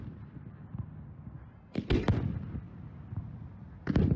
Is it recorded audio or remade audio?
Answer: recorded